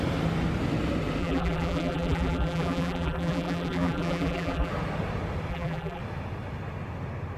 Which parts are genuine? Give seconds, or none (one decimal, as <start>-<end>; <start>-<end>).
0.0-1.2; 4.7-5.5; 6.0-7.4